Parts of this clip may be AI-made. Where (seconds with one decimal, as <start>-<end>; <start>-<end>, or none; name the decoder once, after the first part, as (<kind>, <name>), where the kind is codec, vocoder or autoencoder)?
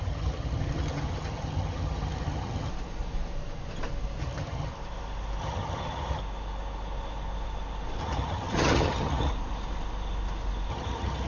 0.0-2.7 (vocoder, HiFi-GAN); 4.2-4.7; 5.4-6.2; 8.0-9.3; 10.7-11.3